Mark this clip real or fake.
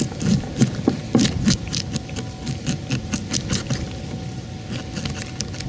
real